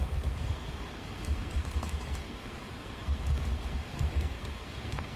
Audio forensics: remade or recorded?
remade